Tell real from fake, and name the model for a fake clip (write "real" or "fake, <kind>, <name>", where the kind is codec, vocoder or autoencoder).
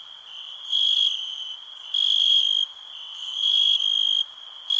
real